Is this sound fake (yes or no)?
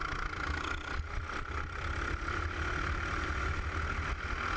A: no